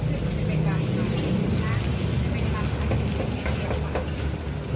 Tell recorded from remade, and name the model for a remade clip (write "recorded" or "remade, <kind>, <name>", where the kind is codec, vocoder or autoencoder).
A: recorded